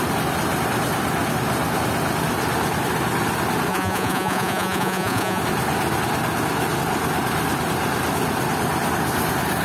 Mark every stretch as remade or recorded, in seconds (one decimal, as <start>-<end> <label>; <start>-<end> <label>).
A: 0.0-3.7 recorded; 3.7-5.4 remade; 5.4-9.6 recorded